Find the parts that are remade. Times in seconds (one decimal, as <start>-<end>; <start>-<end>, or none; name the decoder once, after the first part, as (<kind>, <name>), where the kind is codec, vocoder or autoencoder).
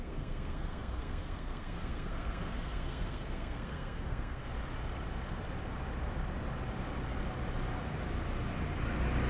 0.0-4.5 (codec, SNAC)